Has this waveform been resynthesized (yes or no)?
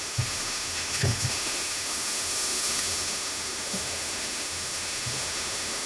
yes